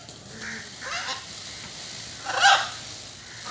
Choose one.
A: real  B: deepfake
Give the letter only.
B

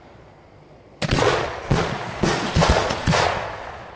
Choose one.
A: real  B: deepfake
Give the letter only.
B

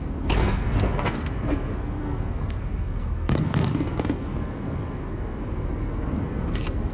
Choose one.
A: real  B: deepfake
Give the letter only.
B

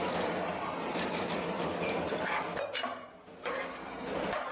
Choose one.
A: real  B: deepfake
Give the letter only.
B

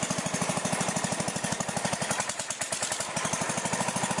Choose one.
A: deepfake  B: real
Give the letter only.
B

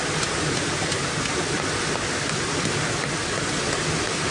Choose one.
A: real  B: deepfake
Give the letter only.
A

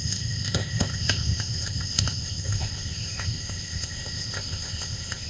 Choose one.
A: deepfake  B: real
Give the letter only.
A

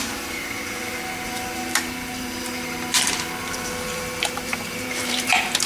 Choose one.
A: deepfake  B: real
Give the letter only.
A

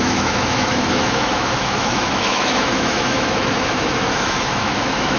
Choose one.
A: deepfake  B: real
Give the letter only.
A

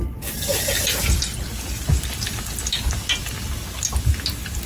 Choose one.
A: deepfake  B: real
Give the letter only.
B